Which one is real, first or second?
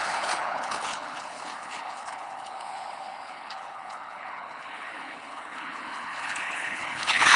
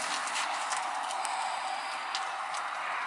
second